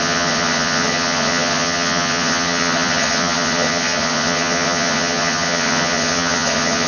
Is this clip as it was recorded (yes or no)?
no